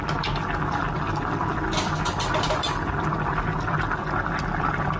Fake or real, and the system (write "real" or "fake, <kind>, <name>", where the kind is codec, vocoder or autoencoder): real